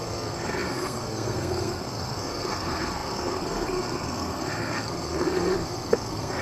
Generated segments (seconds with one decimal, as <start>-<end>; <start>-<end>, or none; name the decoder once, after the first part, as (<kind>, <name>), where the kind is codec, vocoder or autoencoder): 0.0-6.4 (codec, SNAC)

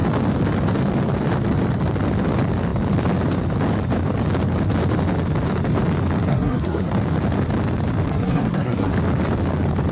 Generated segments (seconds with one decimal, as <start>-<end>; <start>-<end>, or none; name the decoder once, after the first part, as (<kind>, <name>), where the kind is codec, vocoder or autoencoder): 6.3-6.9 (codec, SNAC); 8.1-8.9

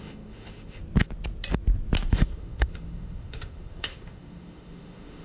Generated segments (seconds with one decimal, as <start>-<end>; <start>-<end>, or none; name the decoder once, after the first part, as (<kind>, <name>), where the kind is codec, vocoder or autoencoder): 0.0-0.8 (autoencoder, DAC-VAE); 2.1-5.2

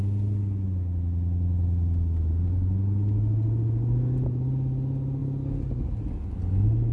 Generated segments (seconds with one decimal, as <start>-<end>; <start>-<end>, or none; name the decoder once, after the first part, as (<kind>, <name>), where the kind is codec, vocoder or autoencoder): none